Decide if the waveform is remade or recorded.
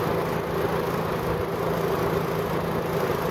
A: recorded